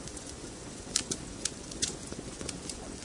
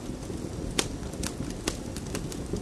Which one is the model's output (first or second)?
first